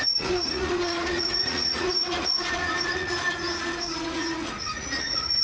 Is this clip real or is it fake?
fake